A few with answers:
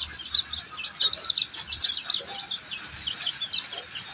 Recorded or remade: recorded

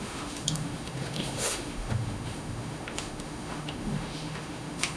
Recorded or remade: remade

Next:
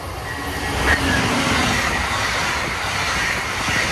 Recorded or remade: recorded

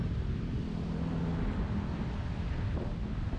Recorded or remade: recorded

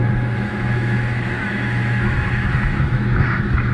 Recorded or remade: remade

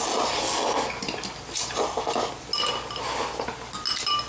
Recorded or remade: recorded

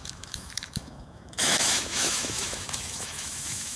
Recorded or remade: remade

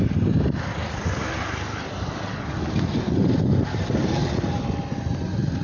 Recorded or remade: recorded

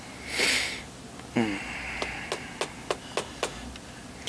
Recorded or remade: recorded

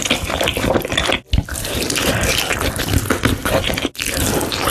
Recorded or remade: recorded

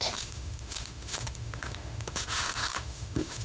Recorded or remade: remade